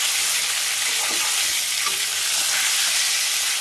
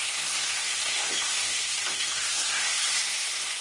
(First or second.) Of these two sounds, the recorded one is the first